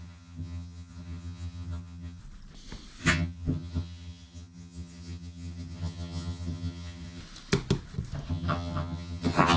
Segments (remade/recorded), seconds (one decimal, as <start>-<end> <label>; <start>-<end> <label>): 0.0-2.2 remade; 2.2-3.0 recorded; 3.0-7.2 remade; 7.2-8.3 recorded; 8.3-9.6 remade